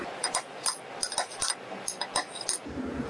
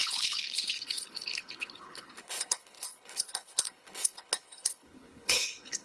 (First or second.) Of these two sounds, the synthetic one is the second